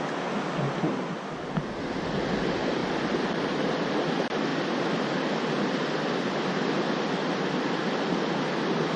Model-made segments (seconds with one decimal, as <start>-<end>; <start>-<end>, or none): none

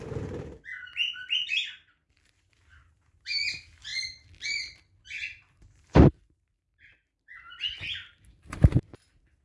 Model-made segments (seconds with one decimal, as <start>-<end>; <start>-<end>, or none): 1.6-2.5; 3.9-9.0

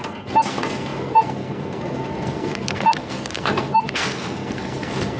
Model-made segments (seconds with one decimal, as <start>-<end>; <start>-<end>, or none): 0.0-5.2

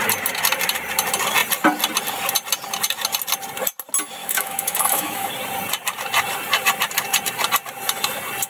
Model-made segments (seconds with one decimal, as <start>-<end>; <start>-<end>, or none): 4.2-5.3

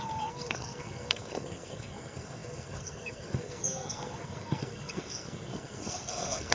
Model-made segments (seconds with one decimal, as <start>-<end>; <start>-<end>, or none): 0.0-6.5